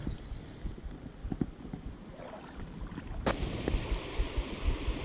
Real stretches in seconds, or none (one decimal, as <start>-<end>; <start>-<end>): 0.0-1.2; 4.2-5.0